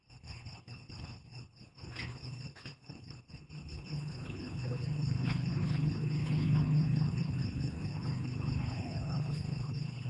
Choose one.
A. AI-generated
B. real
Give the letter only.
A